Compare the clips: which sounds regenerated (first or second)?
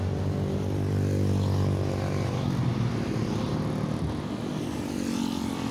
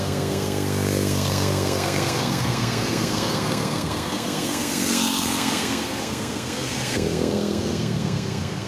second